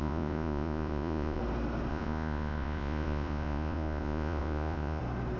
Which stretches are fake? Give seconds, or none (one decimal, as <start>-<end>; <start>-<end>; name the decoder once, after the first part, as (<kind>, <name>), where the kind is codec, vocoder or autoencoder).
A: 0.0-1.4 (vocoder, Vocos); 1.9-5.0